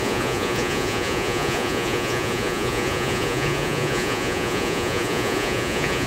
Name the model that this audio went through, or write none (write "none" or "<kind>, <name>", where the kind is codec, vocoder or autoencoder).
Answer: vocoder, Vocos